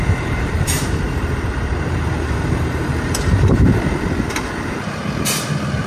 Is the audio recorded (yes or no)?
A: no